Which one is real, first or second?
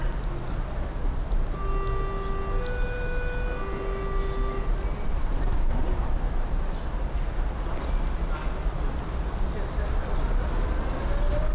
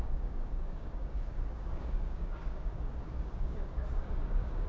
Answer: first